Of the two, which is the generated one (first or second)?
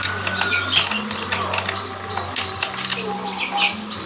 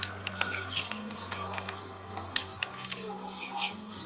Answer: second